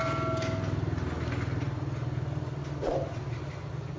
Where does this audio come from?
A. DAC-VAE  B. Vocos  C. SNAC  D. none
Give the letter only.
D